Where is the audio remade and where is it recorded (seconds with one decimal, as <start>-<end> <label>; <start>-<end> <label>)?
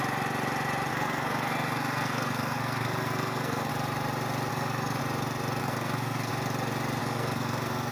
0.0-0.9 recorded; 0.9-3.7 remade; 3.7-4.5 recorded; 4.5-5.0 remade; 5.0-5.6 recorded; 5.6-6.3 remade; 6.3-7.0 recorded; 7.0-7.9 remade